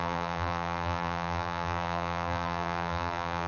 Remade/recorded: remade